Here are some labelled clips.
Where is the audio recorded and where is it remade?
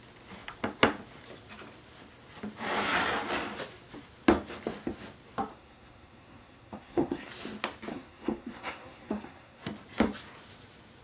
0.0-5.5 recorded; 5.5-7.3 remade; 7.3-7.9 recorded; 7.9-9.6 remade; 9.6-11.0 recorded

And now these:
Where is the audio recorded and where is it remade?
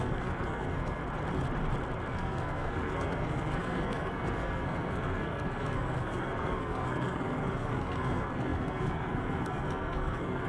0.0-1.0 remade; 1.0-2.1 recorded; 2.1-10.5 remade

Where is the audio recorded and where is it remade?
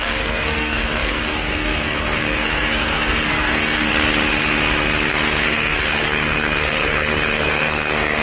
0.0-3.9 remade; 3.9-5.1 recorded; 5.1-8.2 remade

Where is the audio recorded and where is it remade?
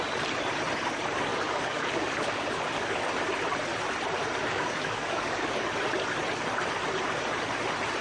0.0-1.3 recorded; 1.3-3.1 remade; 3.1-4.4 recorded; 4.4-5.7 remade; 5.7-8.0 recorded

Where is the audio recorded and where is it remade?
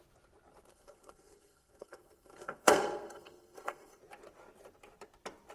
0.0-0.7 recorded; 0.7-4.0 remade; 4.0-5.5 recorded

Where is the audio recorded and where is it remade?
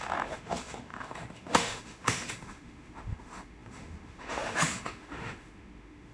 0.0-6.1 remade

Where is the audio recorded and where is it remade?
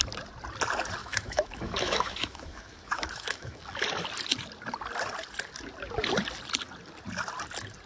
0.0-1.0 recorded; 1.0-3.6 remade; 3.6-7.9 recorded